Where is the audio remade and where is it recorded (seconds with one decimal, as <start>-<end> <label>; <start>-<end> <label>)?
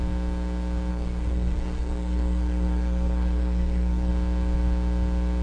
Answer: 0.0-0.9 recorded; 0.9-4.1 remade; 4.1-5.4 recorded